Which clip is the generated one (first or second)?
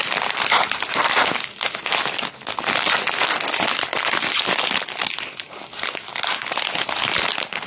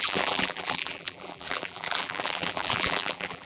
second